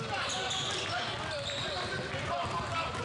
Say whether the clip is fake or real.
real